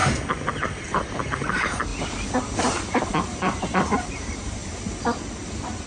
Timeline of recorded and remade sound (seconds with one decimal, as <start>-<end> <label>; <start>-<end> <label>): 0.0-0.9 recorded; 0.9-1.9 remade; 1.9-2.6 recorded; 2.6-4.6 remade; 4.6-5.9 recorded